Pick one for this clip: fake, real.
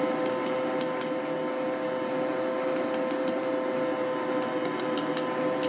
real